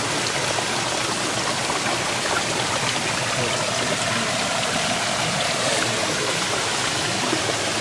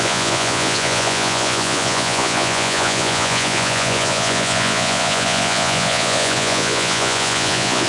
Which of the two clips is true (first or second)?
first